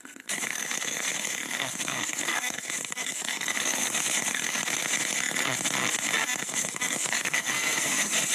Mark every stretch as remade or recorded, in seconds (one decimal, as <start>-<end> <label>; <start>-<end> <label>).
0.0-4.6 remade; 4.6-6.4 recorded; 6.4-8.3 remade